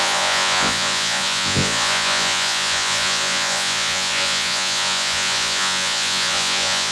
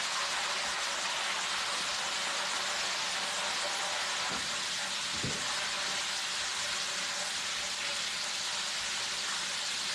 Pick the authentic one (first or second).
second